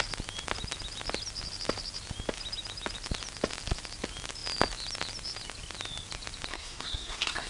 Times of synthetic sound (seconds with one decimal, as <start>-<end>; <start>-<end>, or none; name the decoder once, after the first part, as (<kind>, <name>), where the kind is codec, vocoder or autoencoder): 6.5-7.5 (codec, SNAC)